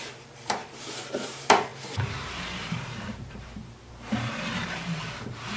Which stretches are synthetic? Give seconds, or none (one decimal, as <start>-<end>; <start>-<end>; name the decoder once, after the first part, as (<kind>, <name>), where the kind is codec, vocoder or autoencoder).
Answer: 0.0-5.6 (vocoder, BigVGAN v2)